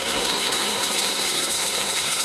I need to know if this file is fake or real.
fake